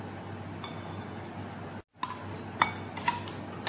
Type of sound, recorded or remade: recorded